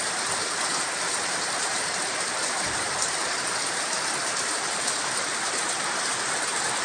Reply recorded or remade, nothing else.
remade